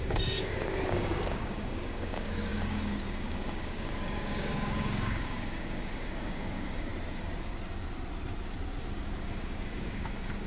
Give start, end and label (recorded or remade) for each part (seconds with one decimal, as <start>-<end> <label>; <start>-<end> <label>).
0.0-6.9 remade; 6.9-8.9 recorded; 8.9-10.5 remade